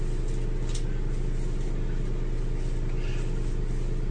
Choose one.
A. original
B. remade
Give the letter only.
A